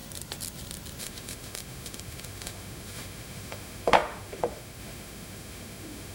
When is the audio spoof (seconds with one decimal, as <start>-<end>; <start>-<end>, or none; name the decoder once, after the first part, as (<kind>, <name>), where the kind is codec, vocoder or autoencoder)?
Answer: 1.0-6.1 (autoencoder, DAC-VAE)